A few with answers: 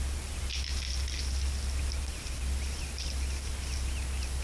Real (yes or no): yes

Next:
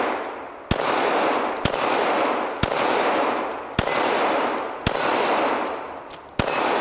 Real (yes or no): yes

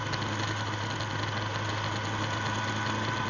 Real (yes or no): yes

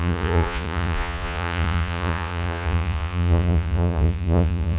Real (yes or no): no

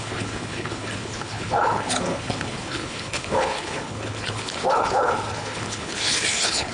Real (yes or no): no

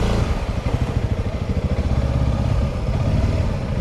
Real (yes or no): no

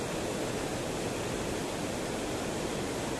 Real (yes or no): yes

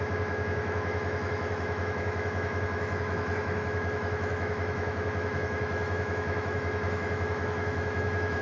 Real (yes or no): no